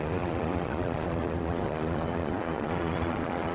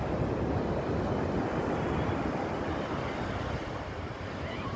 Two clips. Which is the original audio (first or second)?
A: second